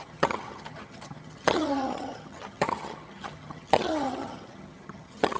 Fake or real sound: fake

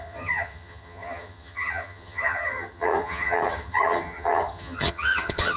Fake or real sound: fake